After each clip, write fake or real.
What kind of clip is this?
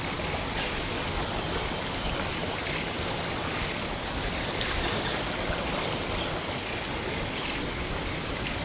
real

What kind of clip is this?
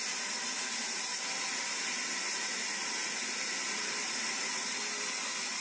real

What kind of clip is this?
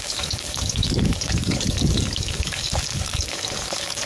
fake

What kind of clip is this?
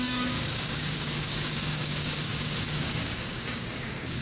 fake